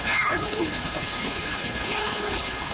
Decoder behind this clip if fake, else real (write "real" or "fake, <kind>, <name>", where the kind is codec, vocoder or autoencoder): fake, codec, HILCodec